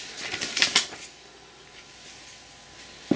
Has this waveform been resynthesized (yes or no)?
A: no